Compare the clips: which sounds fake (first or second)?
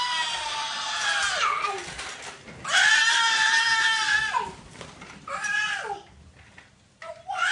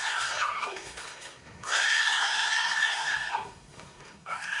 second